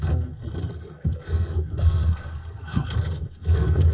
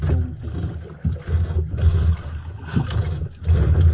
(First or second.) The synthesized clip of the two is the first